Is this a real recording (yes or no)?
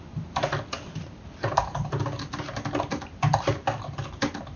yes